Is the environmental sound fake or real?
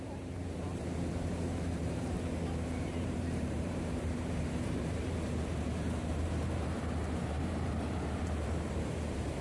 fake